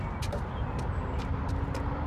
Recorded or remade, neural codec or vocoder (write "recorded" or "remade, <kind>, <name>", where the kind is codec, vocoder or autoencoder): recorded